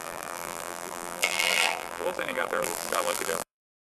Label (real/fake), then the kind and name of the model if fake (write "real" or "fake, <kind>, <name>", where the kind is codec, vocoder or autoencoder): fake, vocoder, BigVGAN v2